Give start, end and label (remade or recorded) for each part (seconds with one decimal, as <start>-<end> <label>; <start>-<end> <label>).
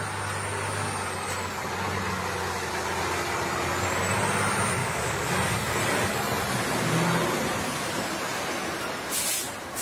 0.0-4.8 recorded; 4.8-5.3 remade; 5.3-9.8 recorded